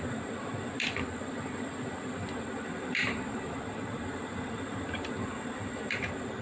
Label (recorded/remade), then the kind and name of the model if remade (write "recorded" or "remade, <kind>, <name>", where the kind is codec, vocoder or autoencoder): remade, vocoder, BigVGAN v2